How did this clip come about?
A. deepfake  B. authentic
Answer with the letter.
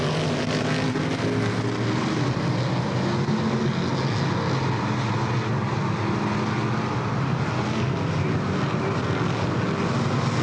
B